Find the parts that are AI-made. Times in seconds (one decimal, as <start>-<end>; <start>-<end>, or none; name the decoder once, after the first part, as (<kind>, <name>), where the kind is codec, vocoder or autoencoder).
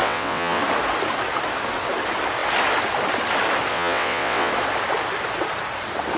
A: 0.0-0.6 (vocoder, WaveNeXt); 3.7-4.5